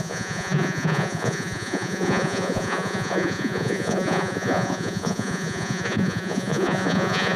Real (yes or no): no